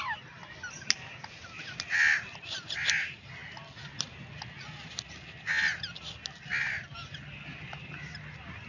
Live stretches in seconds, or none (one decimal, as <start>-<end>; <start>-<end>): 0.0-8.7